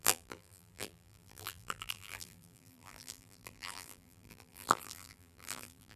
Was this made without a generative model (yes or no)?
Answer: no